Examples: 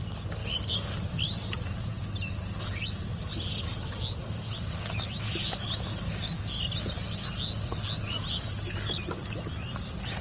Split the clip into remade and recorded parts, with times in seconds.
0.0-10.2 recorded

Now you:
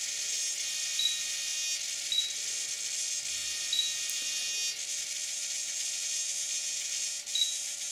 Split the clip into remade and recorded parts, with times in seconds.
0.0-7.9 recorded

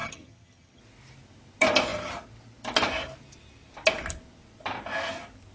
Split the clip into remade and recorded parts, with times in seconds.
0.0-0.8 remade; 0.8-5.5 recorded

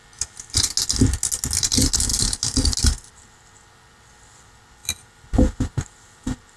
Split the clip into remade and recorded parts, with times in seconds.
0.0-6.6 recorded

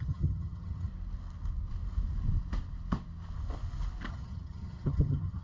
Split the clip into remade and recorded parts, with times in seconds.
0.0-0.9 remade; 0.9-4.1 recorded; 4.1-5.4 remade